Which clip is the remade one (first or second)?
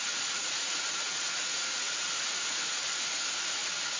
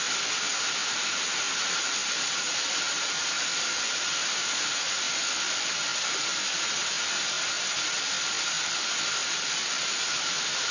first